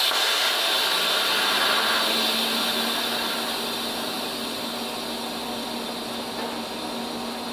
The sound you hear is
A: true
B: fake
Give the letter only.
A